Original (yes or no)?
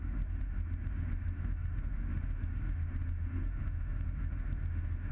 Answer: no